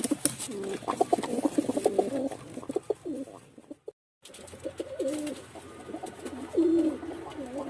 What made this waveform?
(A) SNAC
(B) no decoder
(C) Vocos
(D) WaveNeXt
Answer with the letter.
B